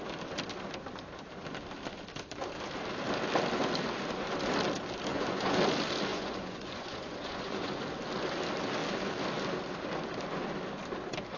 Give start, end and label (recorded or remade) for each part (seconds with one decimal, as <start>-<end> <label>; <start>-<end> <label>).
0.0-5.1 recorded; 5.1-5.6 remade; 5.6-6.1 recorded; 6.1-7.8 remade; 7.8-11.4 recorded